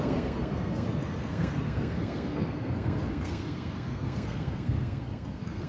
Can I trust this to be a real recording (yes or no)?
no